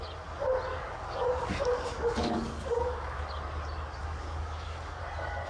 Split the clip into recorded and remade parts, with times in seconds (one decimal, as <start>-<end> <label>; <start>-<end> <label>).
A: 0.0-0.7 recorded; 0.7-3.2 remade; 3.2-4.0 recorded; 4.0-5.0 remade; 5.0-5.5 recorded